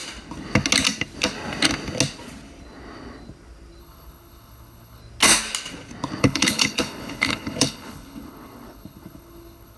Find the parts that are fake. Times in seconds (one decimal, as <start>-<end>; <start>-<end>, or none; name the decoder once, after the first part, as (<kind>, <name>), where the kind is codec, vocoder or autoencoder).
3.8-5.0 (codec, HILCodec); 6.2-9.8